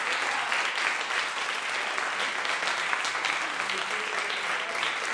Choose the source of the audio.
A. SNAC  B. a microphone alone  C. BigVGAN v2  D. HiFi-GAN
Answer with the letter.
B